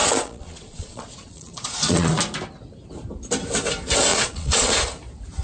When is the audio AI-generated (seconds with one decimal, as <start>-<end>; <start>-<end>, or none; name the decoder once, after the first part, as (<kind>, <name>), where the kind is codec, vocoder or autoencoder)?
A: 0.0-2.2 (vocoder, Vocos); 4.1-4.8